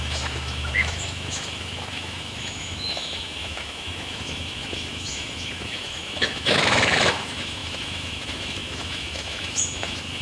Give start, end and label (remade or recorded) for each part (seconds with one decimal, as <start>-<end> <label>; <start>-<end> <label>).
0.0-10.2 remade